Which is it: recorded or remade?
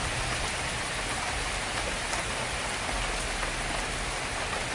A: recorded